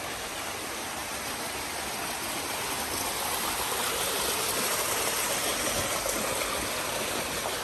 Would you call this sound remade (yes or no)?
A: no